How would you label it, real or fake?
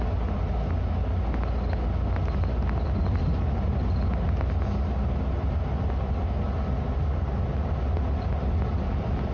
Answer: real